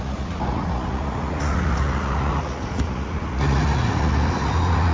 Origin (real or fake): fake